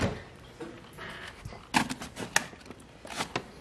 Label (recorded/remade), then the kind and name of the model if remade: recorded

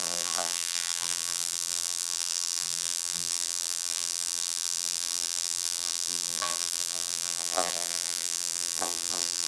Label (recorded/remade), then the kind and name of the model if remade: remade, vocoder, BigVGAN v2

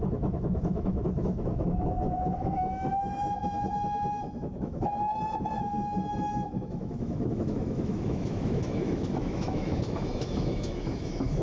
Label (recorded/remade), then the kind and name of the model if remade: remade, autoencoder, DAC-VAE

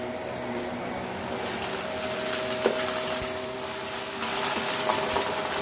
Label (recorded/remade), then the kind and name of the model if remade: recorded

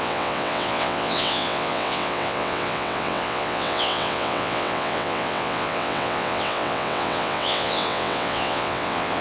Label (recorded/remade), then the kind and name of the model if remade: remade, vocoder, WaveNeXt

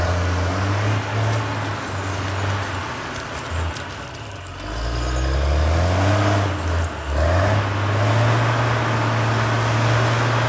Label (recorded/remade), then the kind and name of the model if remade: recorded